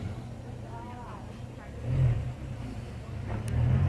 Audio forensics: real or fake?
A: real